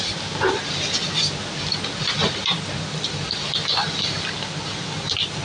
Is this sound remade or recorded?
recorded